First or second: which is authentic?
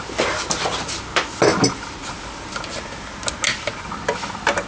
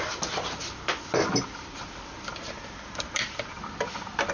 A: first